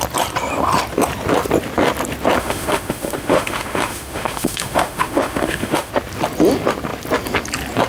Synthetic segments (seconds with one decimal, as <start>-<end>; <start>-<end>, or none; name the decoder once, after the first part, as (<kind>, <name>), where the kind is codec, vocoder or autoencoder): 2.4-5.9 (autoencoder, DAC-VAE)